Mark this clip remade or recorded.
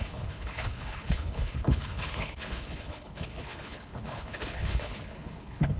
remade